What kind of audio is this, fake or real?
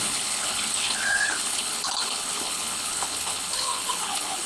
fake